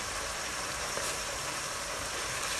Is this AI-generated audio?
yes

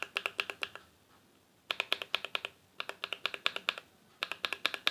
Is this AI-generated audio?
no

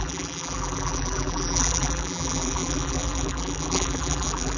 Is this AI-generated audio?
yes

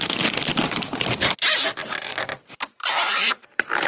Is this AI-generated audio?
yes